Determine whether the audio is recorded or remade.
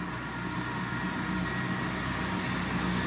recorded